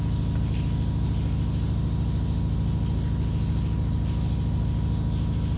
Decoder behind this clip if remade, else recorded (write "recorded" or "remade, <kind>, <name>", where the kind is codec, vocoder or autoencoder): recorded